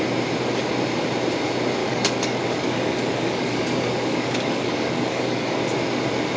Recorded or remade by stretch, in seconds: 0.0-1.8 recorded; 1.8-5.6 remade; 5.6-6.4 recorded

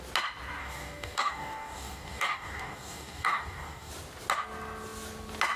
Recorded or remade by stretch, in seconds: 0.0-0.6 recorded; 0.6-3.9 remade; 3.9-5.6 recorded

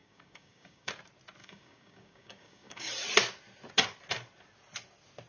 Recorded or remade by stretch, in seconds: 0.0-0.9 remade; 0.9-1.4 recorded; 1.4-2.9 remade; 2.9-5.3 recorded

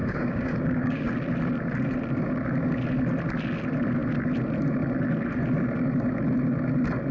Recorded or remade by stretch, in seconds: 0.0-1.1 remade; 1.1-7.1 recorded

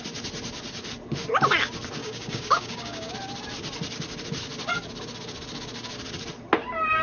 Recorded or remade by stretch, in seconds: 0.0-2.0 recorded; 2.0-3.1 remade; 3.1-7.0 recorded

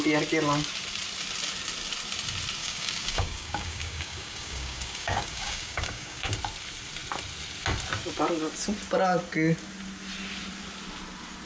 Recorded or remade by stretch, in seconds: 0.0-2.6 recorded; 2.6-6.3 remade; 6.3-11.5 recorded